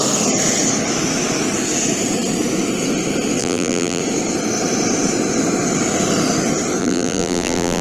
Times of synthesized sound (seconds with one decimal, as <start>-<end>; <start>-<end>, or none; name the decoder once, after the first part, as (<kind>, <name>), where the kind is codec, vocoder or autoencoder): 3.4-4.0 (vocoder, BigVGAN v2); 6.8-7.8